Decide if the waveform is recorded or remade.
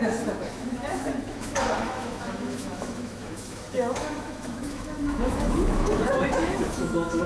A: remade